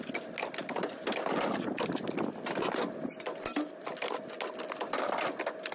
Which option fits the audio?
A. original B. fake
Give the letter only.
A